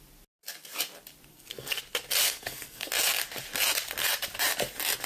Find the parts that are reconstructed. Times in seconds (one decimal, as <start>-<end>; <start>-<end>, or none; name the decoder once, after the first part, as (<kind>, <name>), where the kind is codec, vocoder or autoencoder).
1.3-1.8 (codec, SNAC); 2.2-2.9